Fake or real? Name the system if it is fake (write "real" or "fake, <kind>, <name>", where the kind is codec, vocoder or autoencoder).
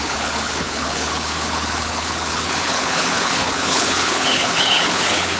fake, codec, HILCodec